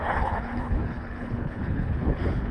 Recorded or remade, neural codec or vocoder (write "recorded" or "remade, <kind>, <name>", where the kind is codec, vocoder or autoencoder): remade, codec, HILCodec